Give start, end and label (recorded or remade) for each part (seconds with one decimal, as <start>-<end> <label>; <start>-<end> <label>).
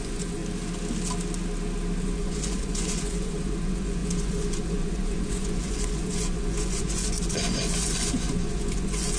0.0-0.4 remade; 0.4-2.0 recorded; 2.0-9.2 remade